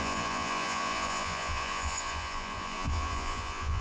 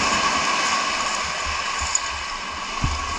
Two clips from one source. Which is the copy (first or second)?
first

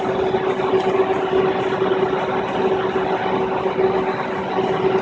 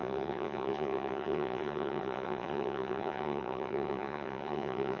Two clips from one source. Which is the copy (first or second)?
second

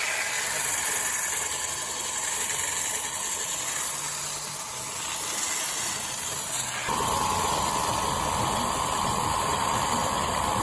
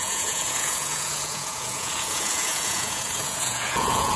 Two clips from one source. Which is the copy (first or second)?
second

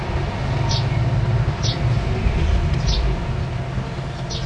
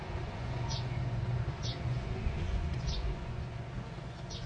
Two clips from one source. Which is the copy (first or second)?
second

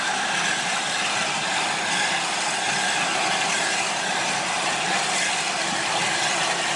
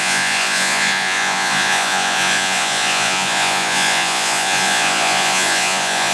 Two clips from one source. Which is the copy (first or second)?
second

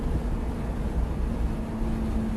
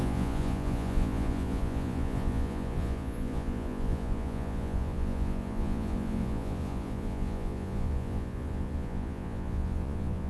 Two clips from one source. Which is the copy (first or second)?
second